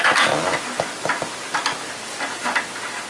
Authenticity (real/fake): real